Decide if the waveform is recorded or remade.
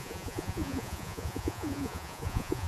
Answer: remade